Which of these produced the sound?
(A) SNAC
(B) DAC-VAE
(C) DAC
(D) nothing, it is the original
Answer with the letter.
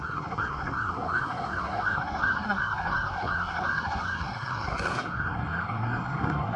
A